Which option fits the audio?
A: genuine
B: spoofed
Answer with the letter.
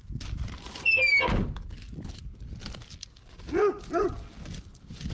A